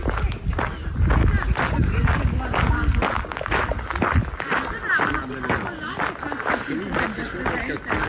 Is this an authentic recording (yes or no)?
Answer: yes